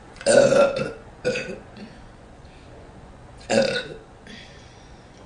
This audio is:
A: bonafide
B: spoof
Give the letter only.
B